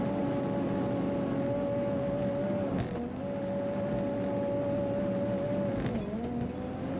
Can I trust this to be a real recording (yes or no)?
yes